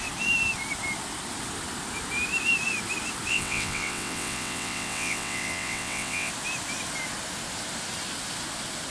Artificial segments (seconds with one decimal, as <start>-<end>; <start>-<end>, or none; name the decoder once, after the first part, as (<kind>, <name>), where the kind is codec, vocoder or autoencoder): 3.3-6.3 (vocoder, WaveNeXt)